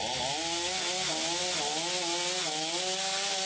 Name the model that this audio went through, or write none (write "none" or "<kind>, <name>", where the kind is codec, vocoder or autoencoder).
none